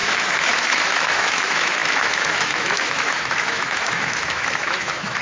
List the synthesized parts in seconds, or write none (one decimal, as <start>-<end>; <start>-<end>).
0.0-5.2